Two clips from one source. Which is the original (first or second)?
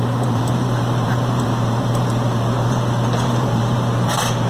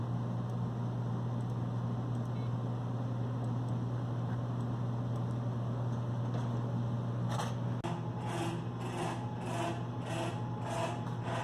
second